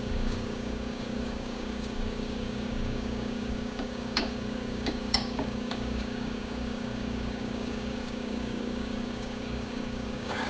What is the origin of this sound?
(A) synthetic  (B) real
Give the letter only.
A